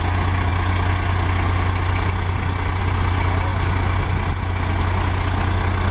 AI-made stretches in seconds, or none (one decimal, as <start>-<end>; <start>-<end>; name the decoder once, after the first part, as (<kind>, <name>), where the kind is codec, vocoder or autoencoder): none